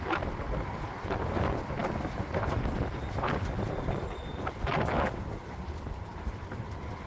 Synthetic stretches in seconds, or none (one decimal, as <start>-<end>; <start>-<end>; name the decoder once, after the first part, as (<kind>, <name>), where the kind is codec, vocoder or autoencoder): none